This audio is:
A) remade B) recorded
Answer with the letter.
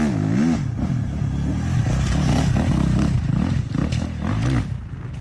B